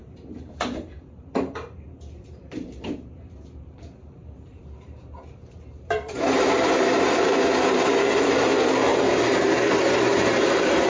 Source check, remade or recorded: remade